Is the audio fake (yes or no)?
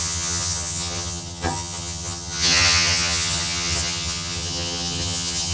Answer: yes